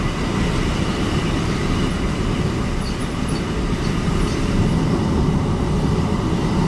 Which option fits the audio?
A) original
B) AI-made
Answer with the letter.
A